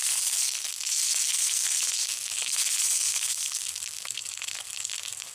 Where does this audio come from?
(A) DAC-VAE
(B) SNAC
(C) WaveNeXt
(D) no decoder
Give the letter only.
B